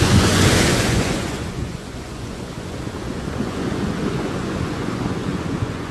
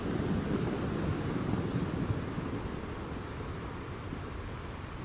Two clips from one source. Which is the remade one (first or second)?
first